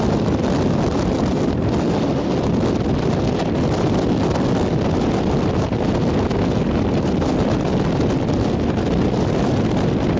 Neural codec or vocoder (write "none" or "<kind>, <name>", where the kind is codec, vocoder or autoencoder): none